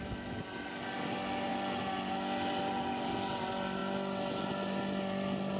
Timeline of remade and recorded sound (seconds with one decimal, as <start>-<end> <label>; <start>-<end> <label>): 0.0-5.6 recorded